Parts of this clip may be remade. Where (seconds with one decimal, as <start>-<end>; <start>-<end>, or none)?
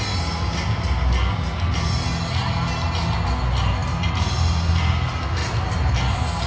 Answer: none